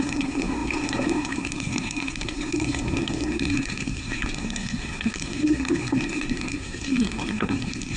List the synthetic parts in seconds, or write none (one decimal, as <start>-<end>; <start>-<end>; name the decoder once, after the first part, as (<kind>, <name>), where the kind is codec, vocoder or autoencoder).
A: 0.0-8.0 (codec, SNAC)